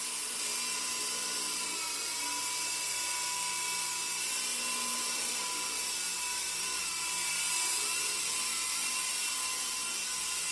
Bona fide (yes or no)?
yes